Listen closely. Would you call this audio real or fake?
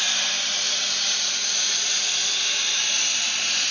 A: real